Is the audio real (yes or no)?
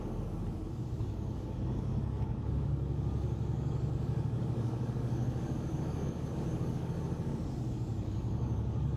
no